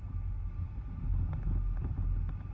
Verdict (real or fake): real